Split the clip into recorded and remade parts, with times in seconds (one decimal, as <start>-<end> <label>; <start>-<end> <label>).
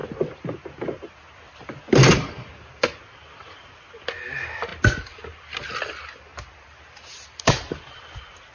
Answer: 0.0-8.5 recorded